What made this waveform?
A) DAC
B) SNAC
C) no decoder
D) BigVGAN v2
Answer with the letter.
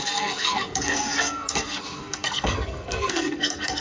B